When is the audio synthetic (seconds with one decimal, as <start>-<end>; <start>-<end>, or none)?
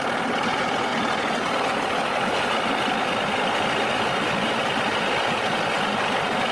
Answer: none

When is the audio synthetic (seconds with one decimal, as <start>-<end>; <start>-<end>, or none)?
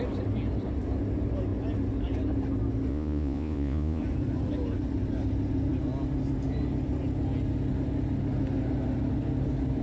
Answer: 2.9-4.0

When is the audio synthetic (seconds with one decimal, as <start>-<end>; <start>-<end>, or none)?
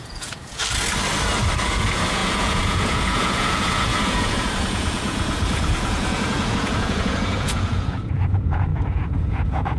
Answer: 0.0-0.6; 1.6-9.8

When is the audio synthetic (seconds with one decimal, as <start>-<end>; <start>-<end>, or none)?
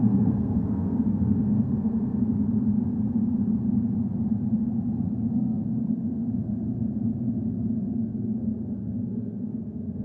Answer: 0.0-2.2; 5.3-6.3; 7.9-10.0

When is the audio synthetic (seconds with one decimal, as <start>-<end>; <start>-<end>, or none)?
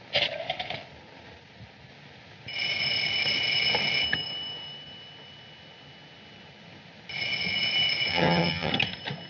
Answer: 8.1-8.7